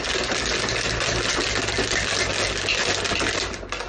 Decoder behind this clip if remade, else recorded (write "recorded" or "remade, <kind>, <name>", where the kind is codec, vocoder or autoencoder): recorded